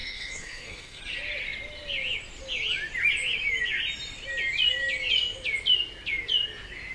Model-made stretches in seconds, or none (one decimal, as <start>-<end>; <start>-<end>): 0.0-1.0